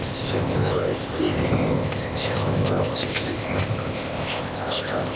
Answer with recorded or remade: remade